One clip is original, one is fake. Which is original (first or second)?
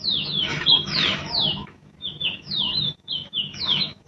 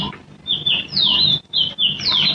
second